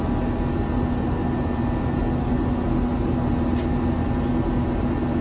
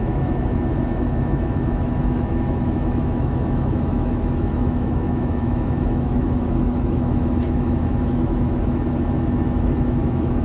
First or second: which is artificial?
second